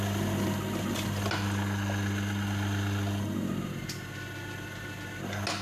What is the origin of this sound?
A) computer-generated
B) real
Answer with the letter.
B